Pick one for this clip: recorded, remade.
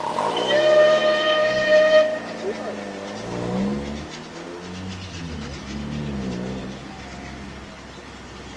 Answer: recorded